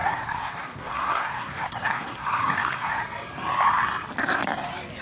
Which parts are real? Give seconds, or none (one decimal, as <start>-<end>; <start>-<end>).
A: 3.0-5.0